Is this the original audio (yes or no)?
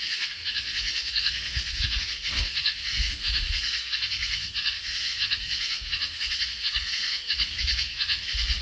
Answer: no